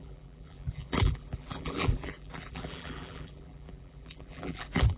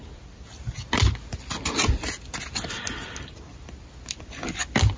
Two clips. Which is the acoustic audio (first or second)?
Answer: second